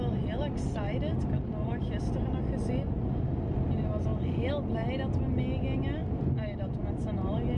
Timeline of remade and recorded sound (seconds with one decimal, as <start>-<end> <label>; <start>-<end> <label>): 0.0-7.6 recorded